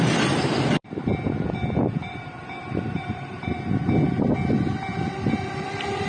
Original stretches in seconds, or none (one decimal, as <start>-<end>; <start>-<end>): 0.0-2.0; 3.5-6.1